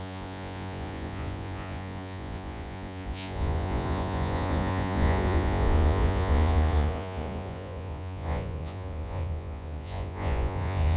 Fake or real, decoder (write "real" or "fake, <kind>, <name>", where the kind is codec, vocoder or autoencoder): fake, vocoder, Vocos